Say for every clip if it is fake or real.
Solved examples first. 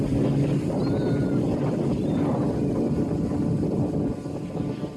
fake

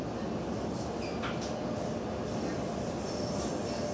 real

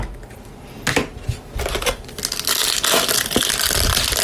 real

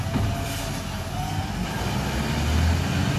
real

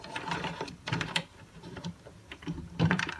fake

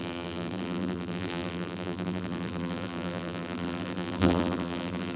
fake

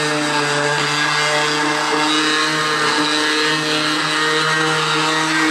real